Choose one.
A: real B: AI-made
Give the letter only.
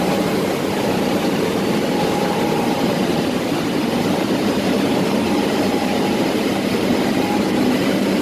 B